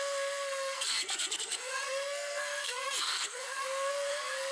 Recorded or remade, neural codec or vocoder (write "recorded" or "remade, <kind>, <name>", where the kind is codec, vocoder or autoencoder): remade, codec, SNAC